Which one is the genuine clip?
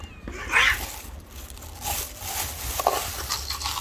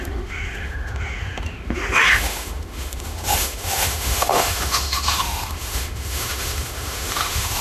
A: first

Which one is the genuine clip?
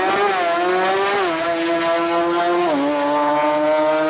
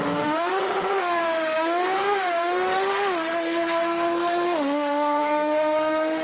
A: first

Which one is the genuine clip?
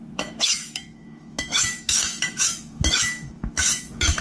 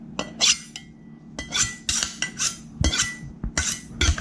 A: second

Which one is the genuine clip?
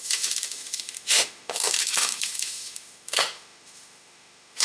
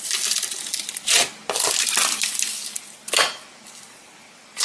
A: second